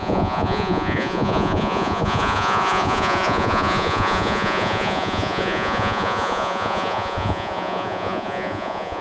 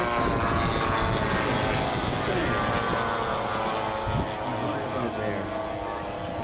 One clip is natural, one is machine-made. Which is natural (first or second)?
second